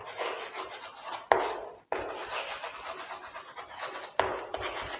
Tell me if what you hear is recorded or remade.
recorded